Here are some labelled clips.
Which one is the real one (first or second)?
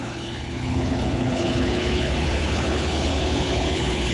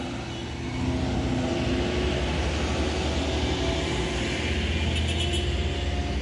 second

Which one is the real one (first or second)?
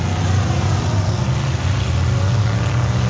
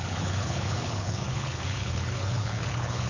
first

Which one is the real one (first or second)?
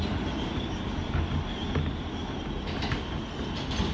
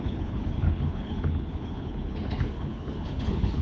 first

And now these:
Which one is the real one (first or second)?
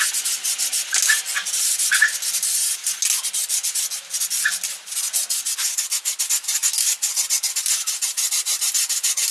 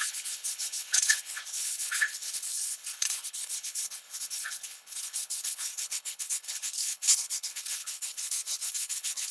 first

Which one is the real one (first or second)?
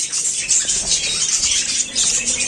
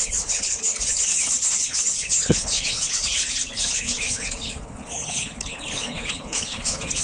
first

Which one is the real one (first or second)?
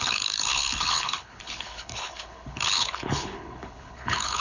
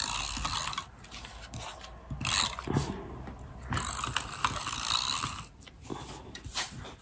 second